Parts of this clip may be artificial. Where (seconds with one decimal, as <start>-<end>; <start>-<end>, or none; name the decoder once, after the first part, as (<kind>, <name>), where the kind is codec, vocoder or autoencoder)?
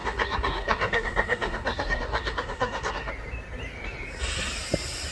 0.0-3.1 (codec, SNAC)